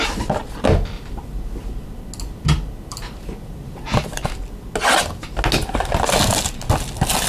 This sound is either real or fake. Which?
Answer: real